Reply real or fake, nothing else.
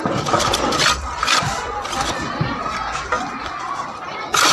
real